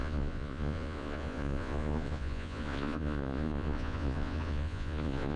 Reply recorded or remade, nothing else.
remade